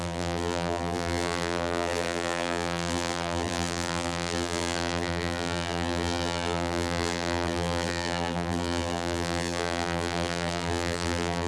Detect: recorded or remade remade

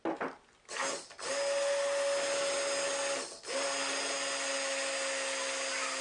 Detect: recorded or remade recorded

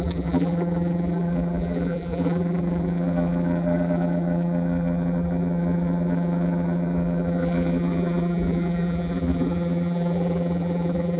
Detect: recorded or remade remade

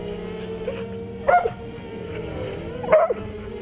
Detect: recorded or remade recorded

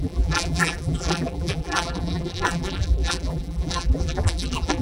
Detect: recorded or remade remade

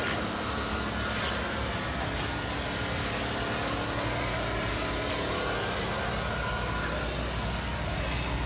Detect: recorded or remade recorded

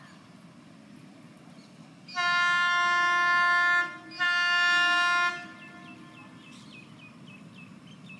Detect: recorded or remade recorded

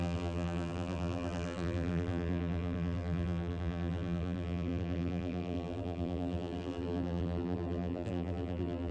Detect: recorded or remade remade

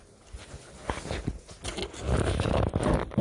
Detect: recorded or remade recorded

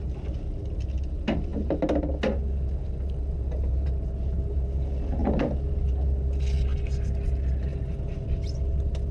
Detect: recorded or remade recorded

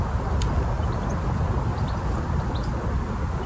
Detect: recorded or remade recorded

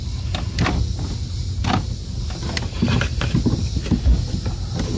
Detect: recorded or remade recorded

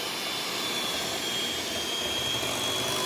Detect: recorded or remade recorded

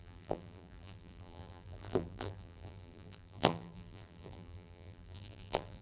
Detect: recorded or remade remade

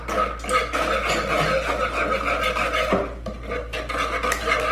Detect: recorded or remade recorded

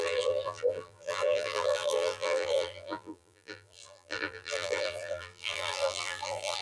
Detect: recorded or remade remade